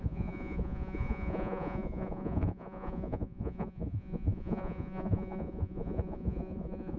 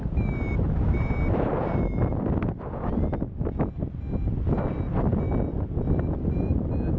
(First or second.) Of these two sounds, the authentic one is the second